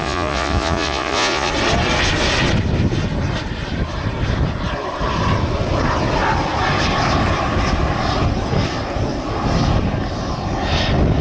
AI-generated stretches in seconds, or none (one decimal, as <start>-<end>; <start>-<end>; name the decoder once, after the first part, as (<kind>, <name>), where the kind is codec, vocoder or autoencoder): 0.0-1.5 (vocoder, Vocos)